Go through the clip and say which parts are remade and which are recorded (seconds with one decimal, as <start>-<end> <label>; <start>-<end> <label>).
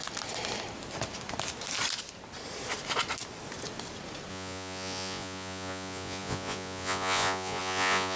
0.0-4.3 recorded; 4.3-8.2 remade